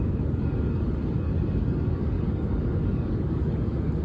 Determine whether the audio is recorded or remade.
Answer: remade